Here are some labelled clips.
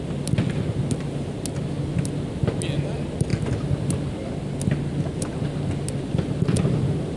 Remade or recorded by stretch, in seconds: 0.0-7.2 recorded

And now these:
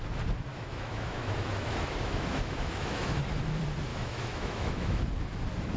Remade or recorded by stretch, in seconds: 0.0-0.5 recorded; 0.5-3.2 remade; 3.2-3.9 recorded; 3.9-5.0 remade; 5.0-5.8 recorded